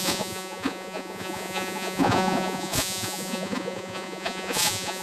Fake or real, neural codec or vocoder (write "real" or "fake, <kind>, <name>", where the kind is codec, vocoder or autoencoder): fake, vocoder, Vocos